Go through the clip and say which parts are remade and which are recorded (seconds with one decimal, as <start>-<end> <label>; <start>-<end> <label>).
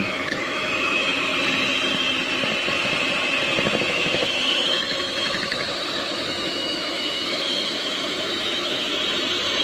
0.0-1.3 remade; 1.3-3.8 recorded; 3.8-8.9 remade; 8.9-9.6 recorded